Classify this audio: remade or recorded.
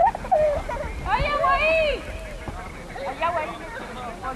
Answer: remade